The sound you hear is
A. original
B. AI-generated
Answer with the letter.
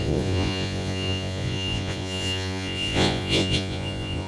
B